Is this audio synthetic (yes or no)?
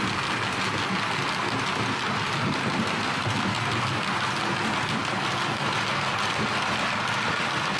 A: no